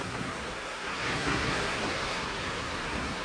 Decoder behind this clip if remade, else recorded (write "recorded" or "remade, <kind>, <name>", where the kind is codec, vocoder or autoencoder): remade, codec, SNAC